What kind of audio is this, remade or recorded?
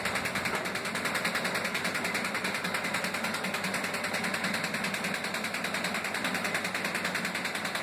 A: recorded